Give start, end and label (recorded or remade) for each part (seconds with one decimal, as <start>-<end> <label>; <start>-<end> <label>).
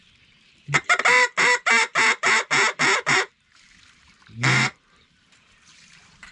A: 0.0-1.9 remade; 1.9-3.1 recorded; 3.1-6.3 remade